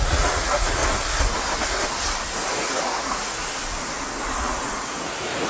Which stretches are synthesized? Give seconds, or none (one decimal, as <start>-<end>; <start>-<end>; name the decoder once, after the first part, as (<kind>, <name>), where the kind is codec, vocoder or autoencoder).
0.0-0.8 (vocoder, Vocos); 2.6-3.4; 4.4-5.5